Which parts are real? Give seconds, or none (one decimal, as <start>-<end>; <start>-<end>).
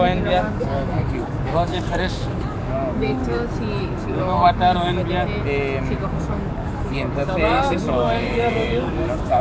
3.2-3.8; 5.0-5.8